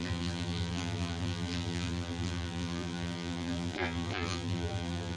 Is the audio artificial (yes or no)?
yes